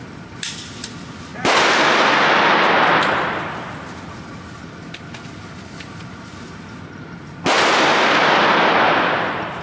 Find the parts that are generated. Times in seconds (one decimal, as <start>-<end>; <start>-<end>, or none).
0.0-1.3; 3.3-9.6